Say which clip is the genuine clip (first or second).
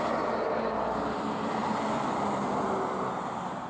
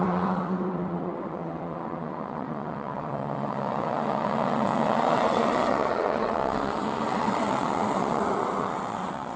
first